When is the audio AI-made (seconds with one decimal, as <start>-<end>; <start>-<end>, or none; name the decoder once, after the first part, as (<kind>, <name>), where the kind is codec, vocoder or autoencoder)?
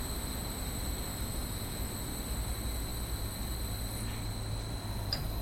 1.1-1.9 (autoencoder, DAC-VAE)